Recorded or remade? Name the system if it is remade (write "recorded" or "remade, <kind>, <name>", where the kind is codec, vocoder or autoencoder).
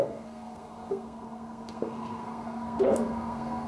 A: remade, codec, SNAC